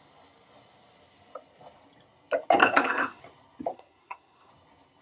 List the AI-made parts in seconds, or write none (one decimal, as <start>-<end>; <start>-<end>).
2.6-3.2; 3.7-4.5